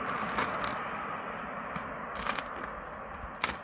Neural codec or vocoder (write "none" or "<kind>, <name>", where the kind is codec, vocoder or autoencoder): none